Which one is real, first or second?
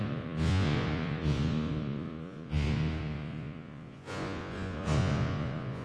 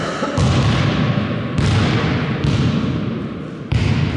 second